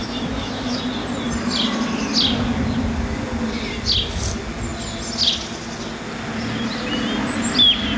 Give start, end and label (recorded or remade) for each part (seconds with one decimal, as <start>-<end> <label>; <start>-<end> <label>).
0.0-0.8 remade; 0.8-8.0 recorded